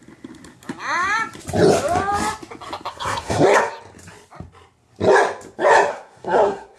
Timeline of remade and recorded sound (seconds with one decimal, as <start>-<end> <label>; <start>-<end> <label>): 0.0-2.9 recorded; 2.9-3.6 remade; 3.6-5.9 recorded; 5.9-6.8 remade